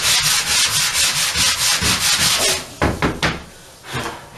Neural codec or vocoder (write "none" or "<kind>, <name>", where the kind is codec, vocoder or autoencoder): none